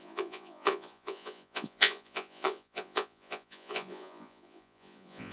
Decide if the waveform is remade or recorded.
remade